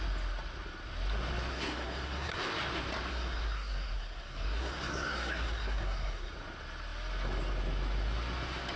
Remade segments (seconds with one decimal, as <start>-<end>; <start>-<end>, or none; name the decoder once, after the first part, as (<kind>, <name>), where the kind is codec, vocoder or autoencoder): 1.5-2.5 (codec, SNAC); 3.1-6.3

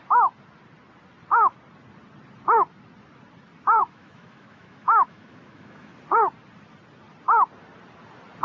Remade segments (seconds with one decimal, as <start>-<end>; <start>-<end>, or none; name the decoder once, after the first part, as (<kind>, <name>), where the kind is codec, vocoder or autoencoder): 3.8-6.0 (autoencoder, DAC-VAE)

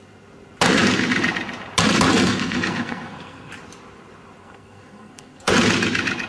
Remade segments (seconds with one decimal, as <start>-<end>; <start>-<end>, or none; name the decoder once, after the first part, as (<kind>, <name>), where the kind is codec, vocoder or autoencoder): 2.1-3.5 (codec, SNAC); 4.4-5.5

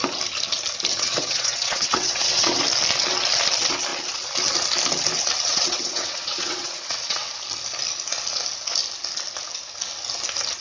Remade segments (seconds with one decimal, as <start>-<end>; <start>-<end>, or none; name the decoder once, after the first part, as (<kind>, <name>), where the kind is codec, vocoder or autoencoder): 0.9-2.6 (vocoder, WaveNeXt); 5.5-7.3

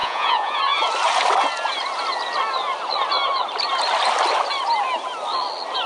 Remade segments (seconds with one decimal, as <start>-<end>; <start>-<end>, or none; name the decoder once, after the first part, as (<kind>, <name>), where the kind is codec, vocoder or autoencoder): 0.0-0.6 (vocoder, Vocos)